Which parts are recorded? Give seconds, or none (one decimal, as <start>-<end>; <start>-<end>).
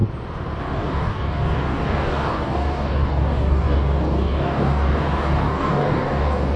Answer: 0.0-0.6